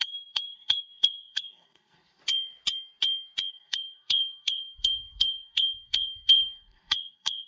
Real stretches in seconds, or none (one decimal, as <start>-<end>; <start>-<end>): 2.2-3.5